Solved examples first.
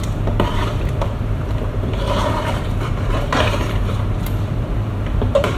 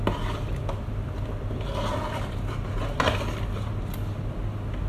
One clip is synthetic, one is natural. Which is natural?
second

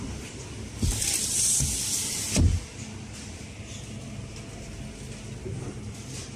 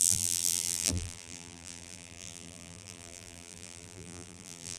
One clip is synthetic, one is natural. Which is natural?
first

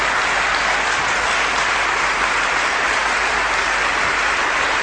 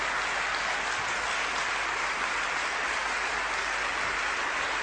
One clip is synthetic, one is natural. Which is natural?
second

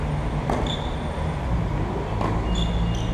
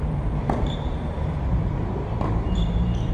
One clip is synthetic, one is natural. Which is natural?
first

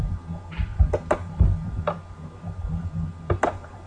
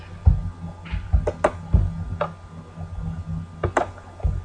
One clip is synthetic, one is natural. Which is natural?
second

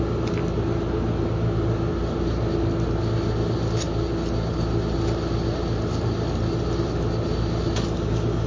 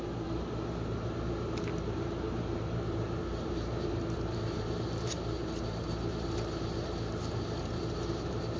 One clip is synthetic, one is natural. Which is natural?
first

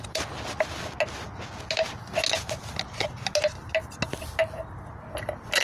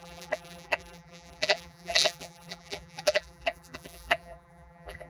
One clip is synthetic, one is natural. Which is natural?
first